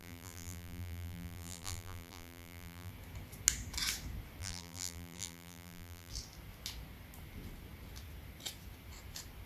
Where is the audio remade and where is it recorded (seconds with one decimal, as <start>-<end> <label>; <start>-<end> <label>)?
0.0-2.9 remade; 2.9-4.4 recorded; 4.4-6.1 remade; 6.1-9.5 recorded